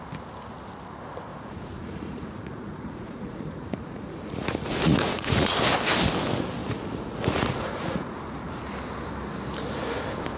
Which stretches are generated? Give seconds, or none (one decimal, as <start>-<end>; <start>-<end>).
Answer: 1.3-5.6; 6.6-8.6